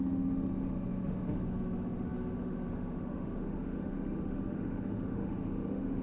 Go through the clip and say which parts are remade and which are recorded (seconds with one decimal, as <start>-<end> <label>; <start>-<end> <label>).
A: 0.0-6.0 remade